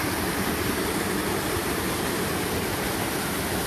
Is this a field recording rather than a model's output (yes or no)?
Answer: yes